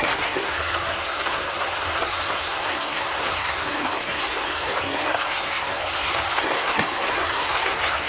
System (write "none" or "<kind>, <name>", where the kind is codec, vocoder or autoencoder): codec, SNAC